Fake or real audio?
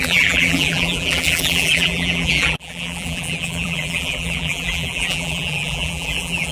fake